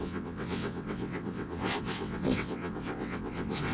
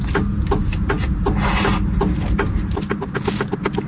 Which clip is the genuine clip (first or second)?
second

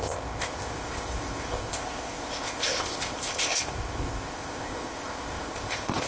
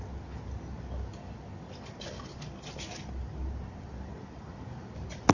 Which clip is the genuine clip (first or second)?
second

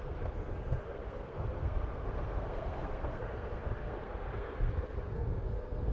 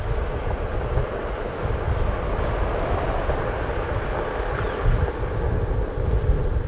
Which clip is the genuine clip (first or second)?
second